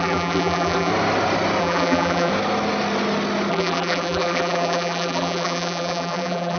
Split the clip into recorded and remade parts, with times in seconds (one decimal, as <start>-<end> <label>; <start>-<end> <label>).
0.0-0.9 remade; 0.9-1.6 recorded; 1.6-2.3 remade; 2.3-3.5 recorded; 3.5-6.6 remade